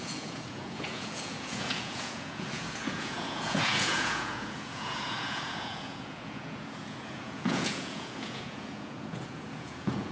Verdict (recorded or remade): remade